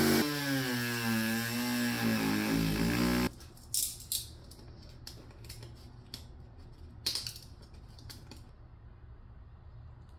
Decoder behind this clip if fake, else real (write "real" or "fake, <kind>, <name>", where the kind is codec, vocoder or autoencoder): real